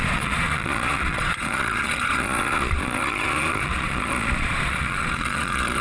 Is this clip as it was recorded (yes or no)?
no